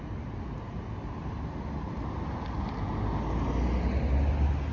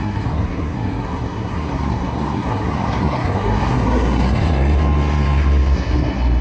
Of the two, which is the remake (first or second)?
second